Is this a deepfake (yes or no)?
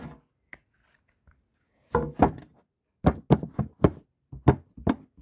no